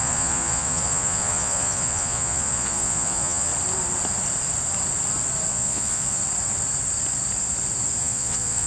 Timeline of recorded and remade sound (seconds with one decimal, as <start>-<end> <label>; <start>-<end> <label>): 0.0-3.5 remade; 3.5-5.5 recorded; 5.5-6.2 remade; 6.2-8.0 recorded; 8.0-8.7 remade

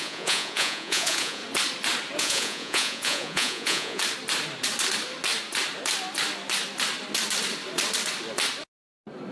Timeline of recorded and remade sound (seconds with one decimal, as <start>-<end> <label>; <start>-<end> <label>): 0.0-1.4 remade; 1.4-2.2 recorded; 2.2-4.0 remade; 4.0-9.3 recorded

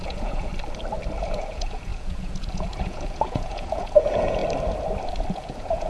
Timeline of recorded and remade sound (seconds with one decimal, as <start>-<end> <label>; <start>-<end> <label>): 0.0-0.5 remade; 0.5-1.2 recorded; 1.2-4.4 remade; 4.4-5.3 recorded; 5.3-5.9 remade

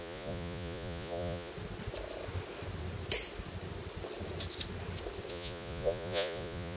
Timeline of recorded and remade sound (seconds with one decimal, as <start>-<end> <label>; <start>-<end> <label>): 0.0-1.5 remade; 1.5-5.3 recorded; 5.3-6.8 remade

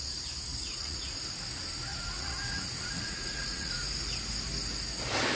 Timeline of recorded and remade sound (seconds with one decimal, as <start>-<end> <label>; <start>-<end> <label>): 0.0-0.6 recorded; 0.6-1.2 remade; 1.2-1.9 recorded; 1.9-3.8 remade; 3.8-5.3 recorded

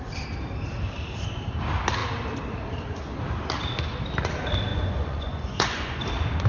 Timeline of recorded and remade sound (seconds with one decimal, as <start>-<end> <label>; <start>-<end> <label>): 0.0-4.7 recorded; 4.7-6.0 remade; 6.0-6.5 recorded

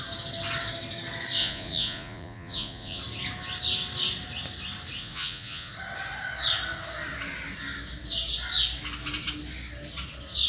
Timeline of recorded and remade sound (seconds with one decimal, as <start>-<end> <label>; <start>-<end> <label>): 0.0-1.4 recorded; 1.4-3.0 remade; 3.0-5.0 recorded; 5.0-5.7 remade; 5.7-10.5 recorded

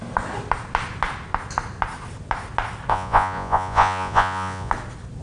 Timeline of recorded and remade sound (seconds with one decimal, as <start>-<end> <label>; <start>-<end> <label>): 0.0-2.9 recorded; 2.9-4.7 remade; 4.7-5.2 recorded